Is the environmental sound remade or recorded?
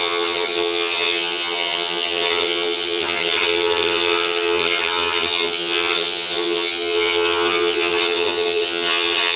remade